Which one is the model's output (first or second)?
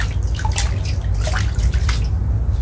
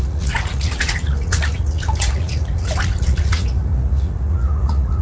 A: second